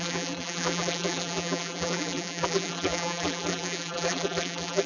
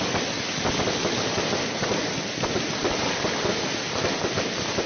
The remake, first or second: first